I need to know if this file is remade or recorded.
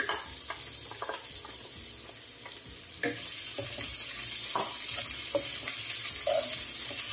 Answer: recorded